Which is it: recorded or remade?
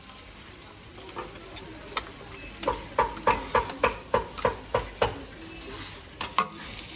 recorded